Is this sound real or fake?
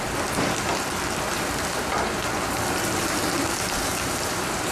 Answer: fake